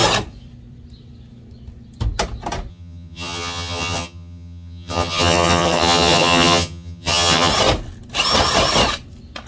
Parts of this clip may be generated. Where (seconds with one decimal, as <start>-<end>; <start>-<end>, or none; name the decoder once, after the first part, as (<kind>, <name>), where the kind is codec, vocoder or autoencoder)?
2.7-7.5 (vocoder, HiFi-GAN)